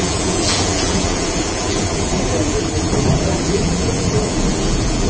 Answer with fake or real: fake